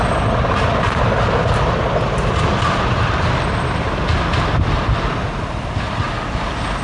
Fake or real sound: real